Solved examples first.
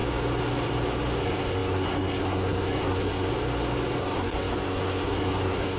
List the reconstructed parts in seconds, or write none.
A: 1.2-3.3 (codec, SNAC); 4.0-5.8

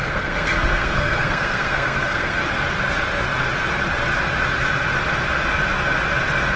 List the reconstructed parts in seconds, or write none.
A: 0.0-2.4 (codec, SNAC)

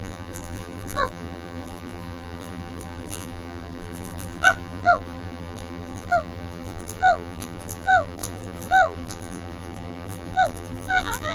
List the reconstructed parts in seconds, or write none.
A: 0.0-11.3 (vocoder, BigVGAN v2)